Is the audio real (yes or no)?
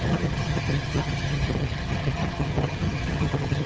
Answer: no